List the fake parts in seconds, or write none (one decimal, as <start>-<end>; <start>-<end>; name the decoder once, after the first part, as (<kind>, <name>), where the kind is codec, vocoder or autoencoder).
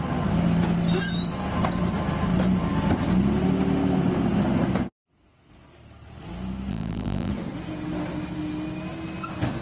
6.7-7.3 (vocoder, BigVGAN v2)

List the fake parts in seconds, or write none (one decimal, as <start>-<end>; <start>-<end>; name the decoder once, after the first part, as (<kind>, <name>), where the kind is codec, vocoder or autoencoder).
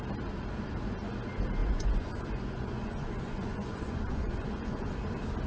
1.6-4.9 (vocoder, Vocos)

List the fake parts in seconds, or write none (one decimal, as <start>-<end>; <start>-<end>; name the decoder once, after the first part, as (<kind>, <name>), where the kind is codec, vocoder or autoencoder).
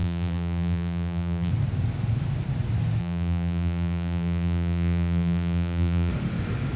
0.0-1.5 (vocoder, BigVGAN v2); 3.0-6.1